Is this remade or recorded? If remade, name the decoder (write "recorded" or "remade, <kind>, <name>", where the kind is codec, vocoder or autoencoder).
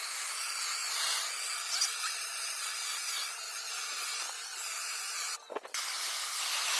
recorded